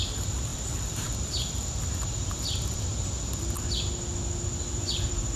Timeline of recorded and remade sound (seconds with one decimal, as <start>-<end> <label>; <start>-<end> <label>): 0.0-2.9 remade; 2.9-5.4 recorded